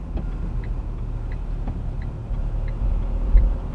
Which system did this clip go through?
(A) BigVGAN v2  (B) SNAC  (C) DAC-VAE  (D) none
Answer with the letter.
D